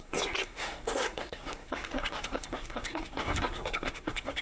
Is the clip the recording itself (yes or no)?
no